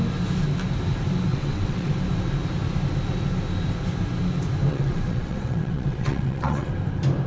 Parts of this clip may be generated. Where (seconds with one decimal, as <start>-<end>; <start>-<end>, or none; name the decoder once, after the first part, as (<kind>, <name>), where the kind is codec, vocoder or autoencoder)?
1.3-1.9 (vocoder, WaveNeXt); 4.7-6.7